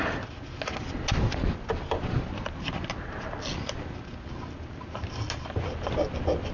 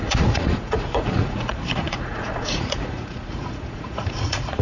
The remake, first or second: second